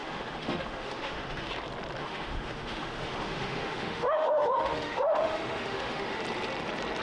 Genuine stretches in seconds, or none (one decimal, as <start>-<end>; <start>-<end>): 1.5-2.0; 6.2-7.0